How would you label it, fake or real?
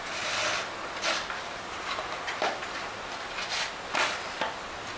real